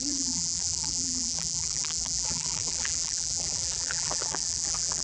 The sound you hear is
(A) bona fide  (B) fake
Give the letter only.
B